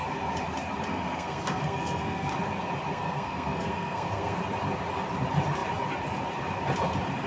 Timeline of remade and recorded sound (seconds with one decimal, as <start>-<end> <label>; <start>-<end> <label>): 0.0-0.9 recorded; 0.9-2.3 remade; 2.3-2.9 recorded; 2.9-4.4 remade; 4.4-7.3 recorded